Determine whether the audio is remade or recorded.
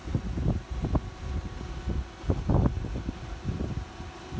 recorded